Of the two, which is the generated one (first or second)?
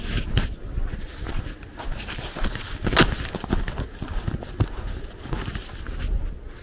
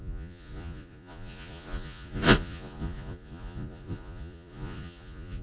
second